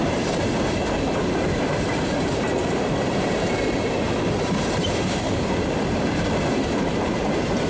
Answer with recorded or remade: remade